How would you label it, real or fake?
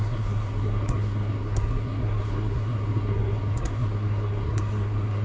fake